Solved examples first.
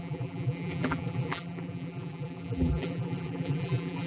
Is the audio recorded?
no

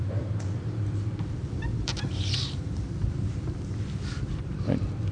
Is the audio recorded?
no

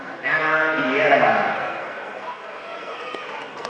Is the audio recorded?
no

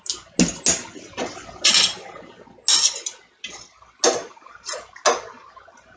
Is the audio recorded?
yes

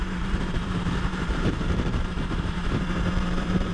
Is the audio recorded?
no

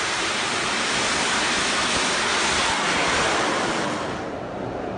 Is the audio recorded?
yes